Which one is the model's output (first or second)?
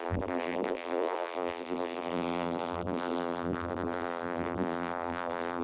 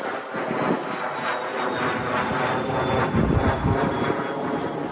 first